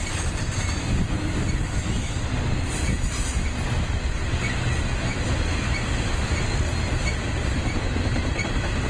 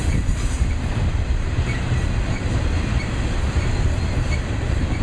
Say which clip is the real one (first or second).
first